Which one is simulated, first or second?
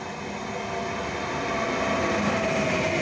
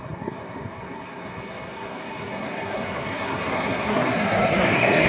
second